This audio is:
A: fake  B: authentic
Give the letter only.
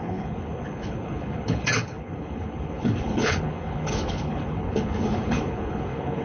A